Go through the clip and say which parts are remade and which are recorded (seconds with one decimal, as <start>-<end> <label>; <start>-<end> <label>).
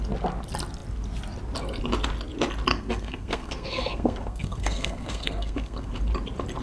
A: 0.0-2.7 recorded; 2.7-5.9 remade; 5.9-6.6 recorded